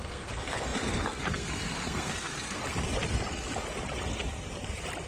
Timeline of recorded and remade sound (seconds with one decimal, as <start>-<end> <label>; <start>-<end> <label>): 0.0-2.6 remade; 2.6-5.1 recorded